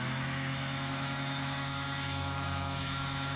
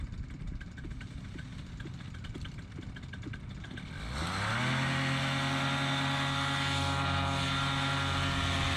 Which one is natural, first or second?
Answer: second